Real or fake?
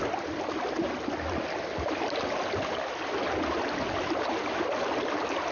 real